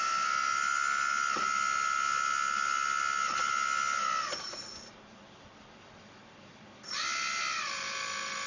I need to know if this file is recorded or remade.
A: recorded